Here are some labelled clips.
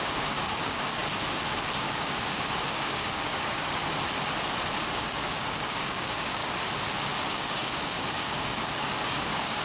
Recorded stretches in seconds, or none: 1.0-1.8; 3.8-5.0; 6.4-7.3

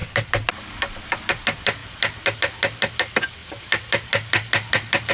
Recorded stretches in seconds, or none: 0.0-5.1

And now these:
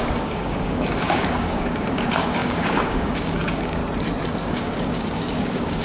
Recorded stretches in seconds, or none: 3.8-4.4

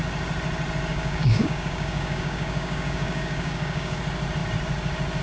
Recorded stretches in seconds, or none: 0.0-0.9; 4.0-5.2